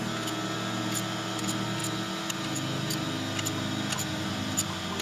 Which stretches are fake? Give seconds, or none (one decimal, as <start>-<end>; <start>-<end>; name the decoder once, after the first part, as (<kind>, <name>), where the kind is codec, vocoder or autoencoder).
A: none